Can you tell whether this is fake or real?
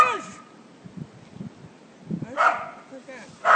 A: real